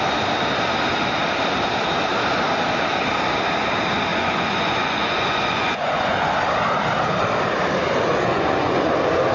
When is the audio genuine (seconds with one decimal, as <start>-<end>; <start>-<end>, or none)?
0.0-4.1; 6.3-8.1; 8.9-9.3